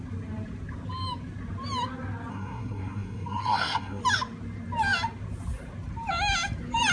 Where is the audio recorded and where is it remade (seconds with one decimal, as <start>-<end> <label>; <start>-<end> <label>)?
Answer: 0.0-2.3 recorded; 2.3-4.0 remade; 4.0-6.9 recorded